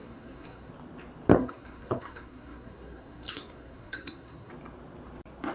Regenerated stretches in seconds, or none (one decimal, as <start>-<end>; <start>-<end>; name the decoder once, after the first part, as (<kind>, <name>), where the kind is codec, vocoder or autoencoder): 0.0-0.7 (codec, SNAC); 1.3-4.5